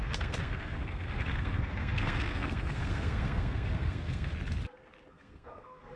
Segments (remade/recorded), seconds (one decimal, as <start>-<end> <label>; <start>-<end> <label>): 0.0-4.3 remade; 4.3-5.1 recorded; 5.1-6.0 remade